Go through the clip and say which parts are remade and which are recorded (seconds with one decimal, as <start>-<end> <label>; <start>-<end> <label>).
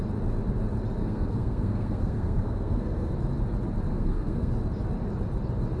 0.0-1.0 recorded; 1.0-3.1 remade; 3.1-3.9 recorded; 3.9-4.5 remade; 4.5-5.8 recorded